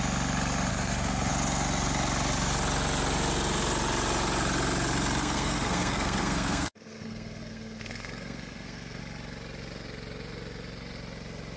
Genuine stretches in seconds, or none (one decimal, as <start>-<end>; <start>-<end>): 0.0-0.7; 1.3-5.2; 9.0-11.6